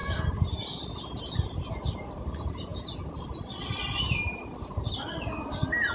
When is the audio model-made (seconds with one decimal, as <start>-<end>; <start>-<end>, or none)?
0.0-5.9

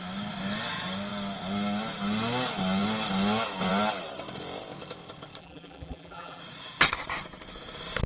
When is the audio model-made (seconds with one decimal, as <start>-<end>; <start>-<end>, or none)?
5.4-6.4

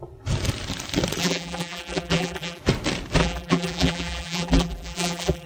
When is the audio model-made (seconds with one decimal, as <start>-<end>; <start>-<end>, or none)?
1.2-2.6; 3.2-5.5